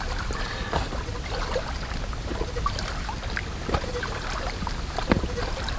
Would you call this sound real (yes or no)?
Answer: yes